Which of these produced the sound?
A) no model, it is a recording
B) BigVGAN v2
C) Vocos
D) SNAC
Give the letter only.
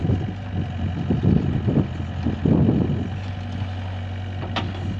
A